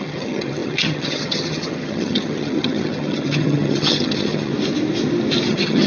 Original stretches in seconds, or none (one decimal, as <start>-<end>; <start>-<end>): 4.5-5.5